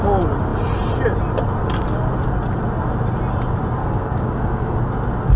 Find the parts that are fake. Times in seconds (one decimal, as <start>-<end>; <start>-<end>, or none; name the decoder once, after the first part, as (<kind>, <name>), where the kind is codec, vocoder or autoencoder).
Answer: 3.8-4.9 (codec, DAC)